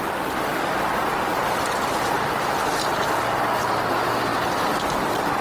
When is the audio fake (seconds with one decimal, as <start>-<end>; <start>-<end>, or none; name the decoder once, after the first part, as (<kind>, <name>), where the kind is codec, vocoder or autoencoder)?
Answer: none